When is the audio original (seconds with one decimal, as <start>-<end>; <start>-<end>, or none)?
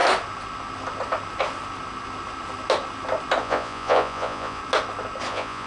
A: 0.0-3.4; 4.6-5.3